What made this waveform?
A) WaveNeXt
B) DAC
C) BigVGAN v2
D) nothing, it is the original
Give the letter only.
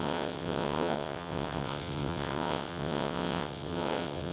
A